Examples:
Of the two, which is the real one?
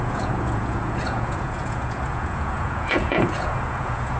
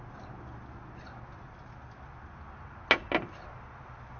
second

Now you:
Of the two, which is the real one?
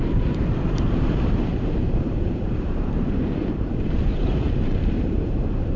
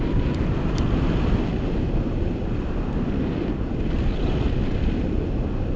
second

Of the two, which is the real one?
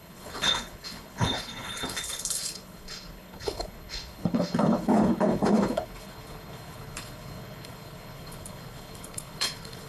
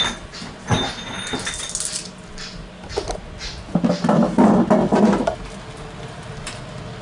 second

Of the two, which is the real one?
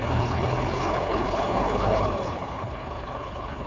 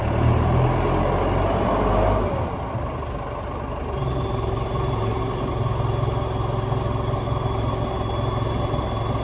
second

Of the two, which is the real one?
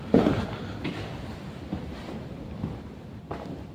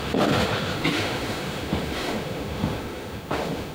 first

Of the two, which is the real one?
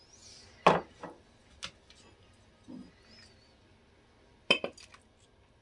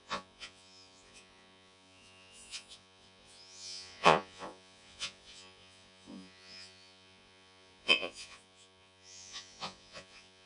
first